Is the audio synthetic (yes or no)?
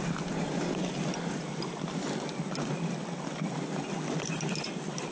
no